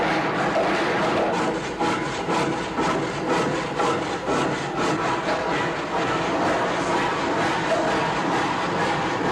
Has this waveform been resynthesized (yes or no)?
no